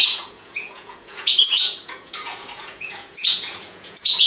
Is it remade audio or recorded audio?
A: remade